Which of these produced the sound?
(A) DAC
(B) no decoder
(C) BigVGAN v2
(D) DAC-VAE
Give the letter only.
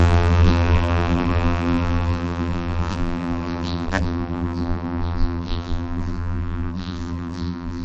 C